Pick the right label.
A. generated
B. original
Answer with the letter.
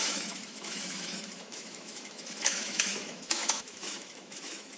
A